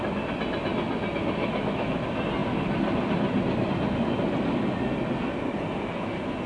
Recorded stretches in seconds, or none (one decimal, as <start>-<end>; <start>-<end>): 0.0-1.4; 2.0-6.5